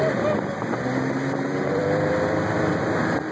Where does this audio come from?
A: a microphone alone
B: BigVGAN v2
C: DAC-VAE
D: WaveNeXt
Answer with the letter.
B